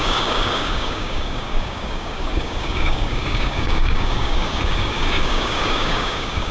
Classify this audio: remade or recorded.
remade